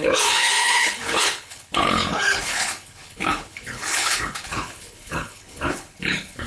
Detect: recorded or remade remade